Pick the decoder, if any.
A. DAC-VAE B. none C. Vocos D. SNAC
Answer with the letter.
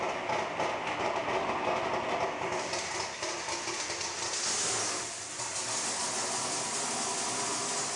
B